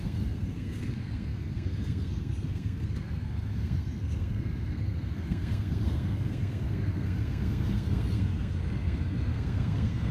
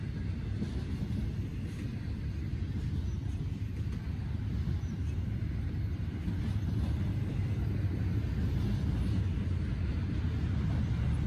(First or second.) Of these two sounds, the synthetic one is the first